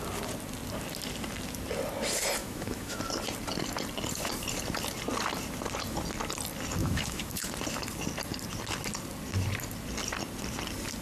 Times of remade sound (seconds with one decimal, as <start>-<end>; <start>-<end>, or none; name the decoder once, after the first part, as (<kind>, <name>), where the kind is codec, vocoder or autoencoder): 2.4-3.0 (autoencoder, DAC-VAE); 6.8-7.5